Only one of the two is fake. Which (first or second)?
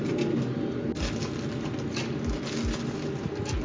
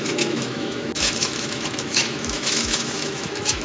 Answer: second